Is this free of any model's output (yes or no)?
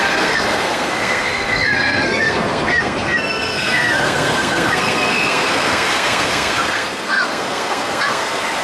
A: no